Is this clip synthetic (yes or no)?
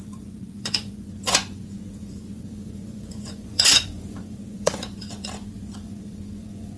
yes